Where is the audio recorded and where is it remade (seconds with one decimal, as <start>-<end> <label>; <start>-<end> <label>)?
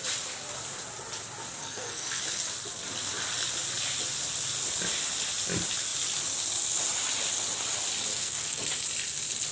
0.0-1.6 recorded; 1.6-2.2 remade; 2.2-8.1 recorded; 8.1-8.6 remade; 8.6-9.5 recorded